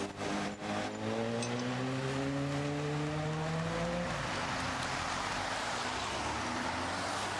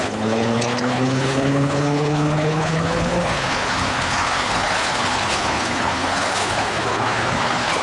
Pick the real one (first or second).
first